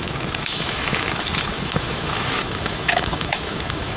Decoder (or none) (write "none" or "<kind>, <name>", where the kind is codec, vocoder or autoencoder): autoencoder, DAC-VAE